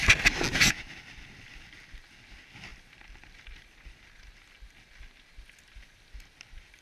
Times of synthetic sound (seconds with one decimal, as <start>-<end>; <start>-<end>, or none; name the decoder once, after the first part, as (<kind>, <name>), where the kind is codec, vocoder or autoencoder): none